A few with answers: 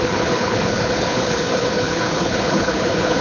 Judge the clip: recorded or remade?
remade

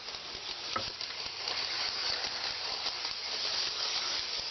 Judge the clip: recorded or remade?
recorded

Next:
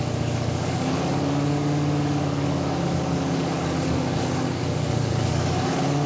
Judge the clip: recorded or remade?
remade